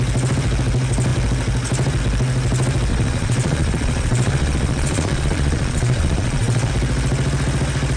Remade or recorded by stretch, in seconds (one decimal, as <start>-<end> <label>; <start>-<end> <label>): 0.0-2.9 recorded; 2.9-6.7 remade; 6.7-8.0 recorded